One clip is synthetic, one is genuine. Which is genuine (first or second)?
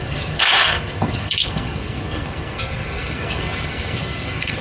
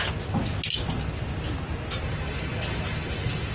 second